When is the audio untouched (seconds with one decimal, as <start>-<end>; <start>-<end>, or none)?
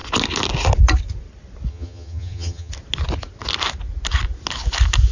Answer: 0.0-1.7; 2.7-5.1